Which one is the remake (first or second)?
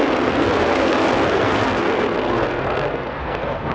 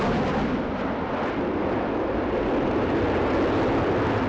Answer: first